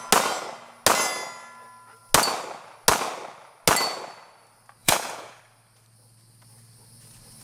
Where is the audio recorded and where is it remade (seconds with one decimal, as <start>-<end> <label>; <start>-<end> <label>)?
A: 0.0-4.8 recorded; 4.8-5.4 remade; 5.4-7.4 recorded